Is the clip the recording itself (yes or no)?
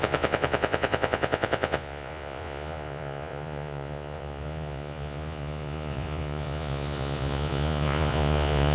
no